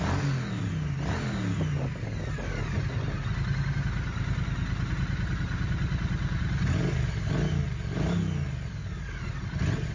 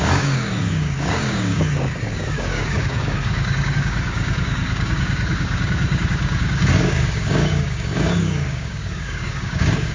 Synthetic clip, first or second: second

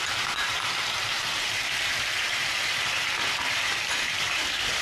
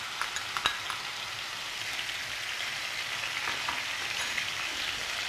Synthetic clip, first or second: first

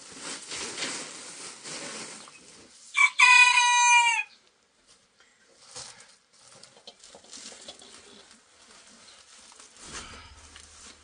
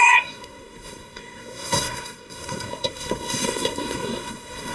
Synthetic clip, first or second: second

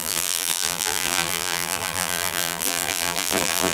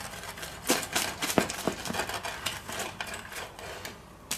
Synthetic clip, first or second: first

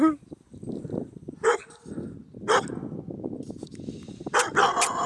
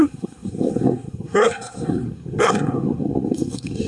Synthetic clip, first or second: second